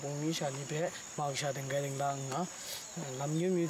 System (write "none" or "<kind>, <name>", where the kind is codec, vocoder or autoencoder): none